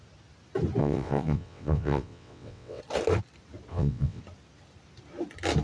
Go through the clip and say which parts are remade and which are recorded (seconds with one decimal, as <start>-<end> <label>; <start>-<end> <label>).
0.0-0.8 recorded; 0.8-2.8 remade; 2.8-3.7 recorded; 3.7-4.2 remade; 4.2-5.6 recorded